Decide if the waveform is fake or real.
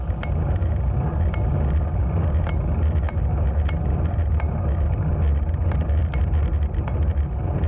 real